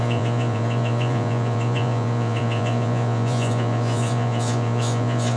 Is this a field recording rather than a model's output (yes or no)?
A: no